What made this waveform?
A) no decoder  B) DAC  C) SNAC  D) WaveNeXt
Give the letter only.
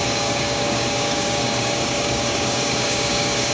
B